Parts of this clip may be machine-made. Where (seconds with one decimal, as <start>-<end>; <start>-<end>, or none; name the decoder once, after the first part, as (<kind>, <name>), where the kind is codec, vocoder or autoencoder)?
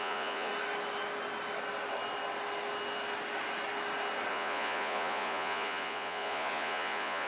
0.0-0.5 (vocoder, Vocos); 4.3-7.3